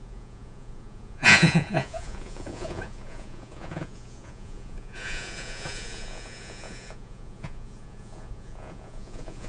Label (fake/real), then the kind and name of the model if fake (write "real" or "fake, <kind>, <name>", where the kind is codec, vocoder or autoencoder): fake, vocoder, Vocos